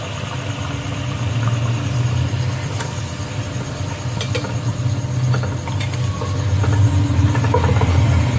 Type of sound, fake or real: real